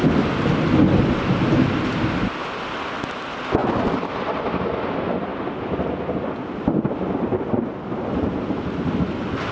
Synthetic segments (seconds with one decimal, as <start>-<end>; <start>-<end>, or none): none